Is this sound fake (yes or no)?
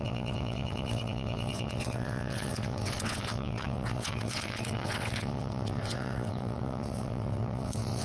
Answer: yes